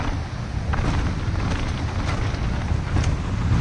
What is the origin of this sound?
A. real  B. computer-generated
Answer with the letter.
A